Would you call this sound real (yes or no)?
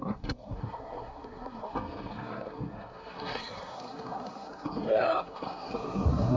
no